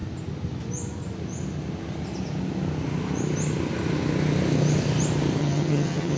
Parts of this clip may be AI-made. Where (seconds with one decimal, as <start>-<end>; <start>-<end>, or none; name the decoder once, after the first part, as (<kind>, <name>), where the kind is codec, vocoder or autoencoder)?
5.4-6.2 (vocoder, HiFi-GAN)